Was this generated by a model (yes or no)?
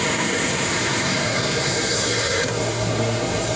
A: yes